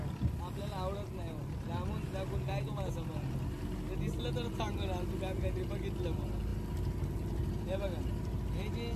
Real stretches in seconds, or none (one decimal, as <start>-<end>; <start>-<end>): 0.0-9.0